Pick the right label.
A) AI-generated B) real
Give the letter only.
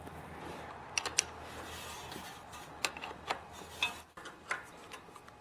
B